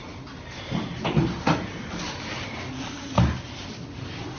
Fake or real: real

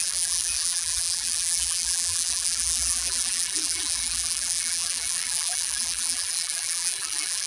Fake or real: fake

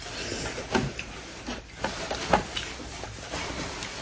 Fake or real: fake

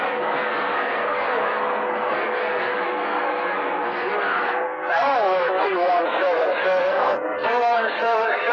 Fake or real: fake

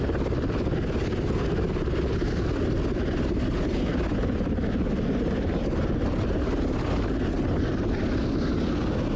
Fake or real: real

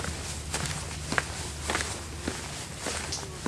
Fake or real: real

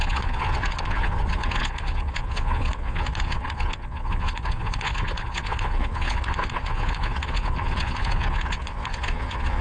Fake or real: fake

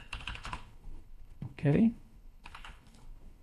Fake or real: fake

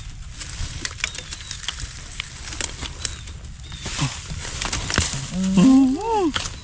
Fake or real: real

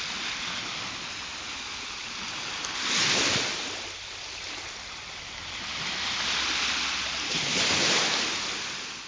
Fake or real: real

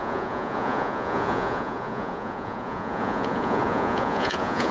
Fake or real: fake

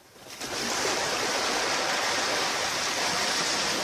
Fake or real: real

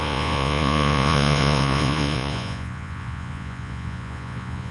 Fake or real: fake